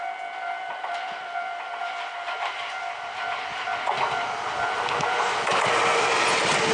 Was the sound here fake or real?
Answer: real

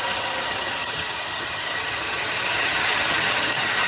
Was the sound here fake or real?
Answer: fake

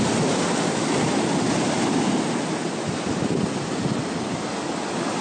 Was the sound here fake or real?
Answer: real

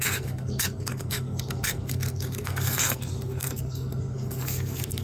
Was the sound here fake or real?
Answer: fake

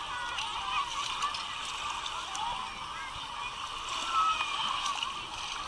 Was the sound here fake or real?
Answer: real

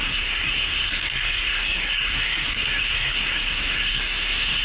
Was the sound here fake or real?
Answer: fake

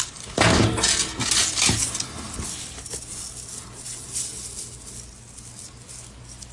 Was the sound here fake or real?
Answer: real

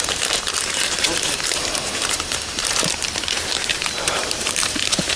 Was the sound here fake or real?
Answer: fake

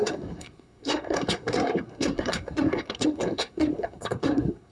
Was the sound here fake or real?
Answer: fake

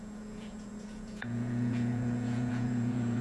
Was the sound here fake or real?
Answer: fake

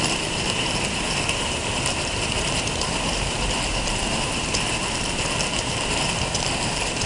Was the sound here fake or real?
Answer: fake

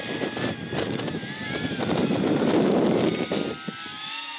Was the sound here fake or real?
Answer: real